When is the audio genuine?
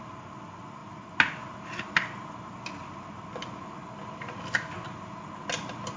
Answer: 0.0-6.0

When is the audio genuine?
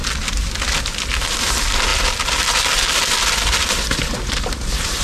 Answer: 0.0-5.0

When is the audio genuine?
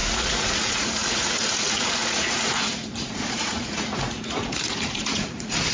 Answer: none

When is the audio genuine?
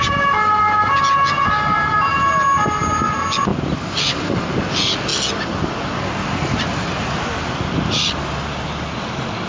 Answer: 0.0-9.5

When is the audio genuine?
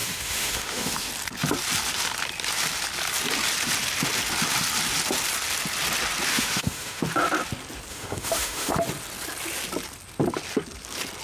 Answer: 1.1-6.3; 7.0-7.9; 8.7-11.2